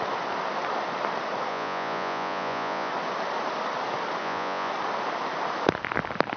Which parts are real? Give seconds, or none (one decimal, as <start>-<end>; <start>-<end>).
0.0-1.5; 2.9-4.2; 4.7-6.4